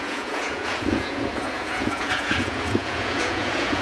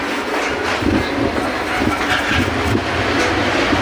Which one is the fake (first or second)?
first